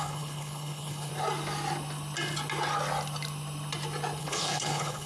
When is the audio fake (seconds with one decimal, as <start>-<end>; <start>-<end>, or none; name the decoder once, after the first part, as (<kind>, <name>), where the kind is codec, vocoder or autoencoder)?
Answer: 0.0-1.1 (codec, HILCodec); 4.2-5.1